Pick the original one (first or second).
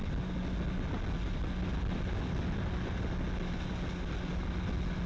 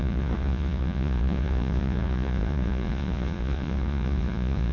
first